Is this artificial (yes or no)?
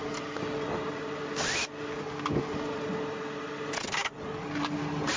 no